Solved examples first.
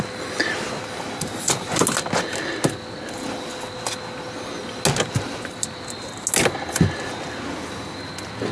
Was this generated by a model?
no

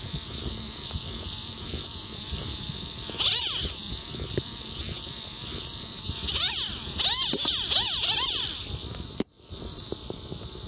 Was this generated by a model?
no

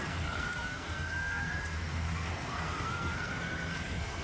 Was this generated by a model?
yes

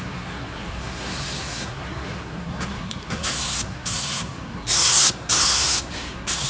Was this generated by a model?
yes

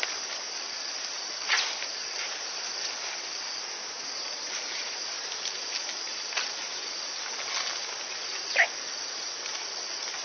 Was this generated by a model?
no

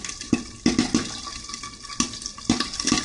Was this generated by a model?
no